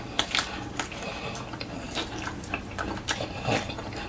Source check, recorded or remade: remade